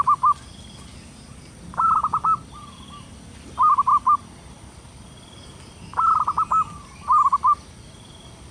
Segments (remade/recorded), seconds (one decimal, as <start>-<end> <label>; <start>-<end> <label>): 0.0-8.5 recorded